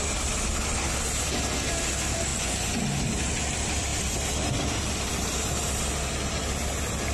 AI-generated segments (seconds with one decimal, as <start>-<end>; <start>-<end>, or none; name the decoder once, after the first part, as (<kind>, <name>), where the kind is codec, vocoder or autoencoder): 2.3-2.8 (vocoder, Vocos)

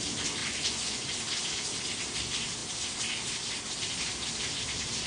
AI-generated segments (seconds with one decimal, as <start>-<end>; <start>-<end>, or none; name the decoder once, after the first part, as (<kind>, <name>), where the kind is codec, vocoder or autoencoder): 0.4-1.1 (vocoder, Vocos)

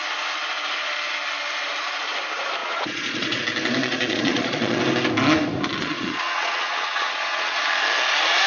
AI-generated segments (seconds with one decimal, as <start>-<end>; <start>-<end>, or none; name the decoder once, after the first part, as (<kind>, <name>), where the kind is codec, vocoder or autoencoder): 2.6-3.4 (vocoder, Vocos); 3.8-4.8; 5.8-7.6

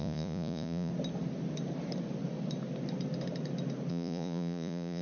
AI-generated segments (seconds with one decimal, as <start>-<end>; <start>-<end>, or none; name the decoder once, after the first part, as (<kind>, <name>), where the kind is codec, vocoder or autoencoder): 0.0-0.9 (vocoder, Vocos); 3.9-5.0